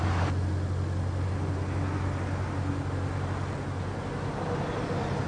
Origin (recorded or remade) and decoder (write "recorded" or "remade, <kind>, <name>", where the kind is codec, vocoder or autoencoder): recorded